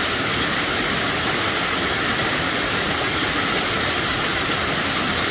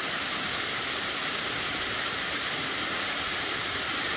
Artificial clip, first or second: second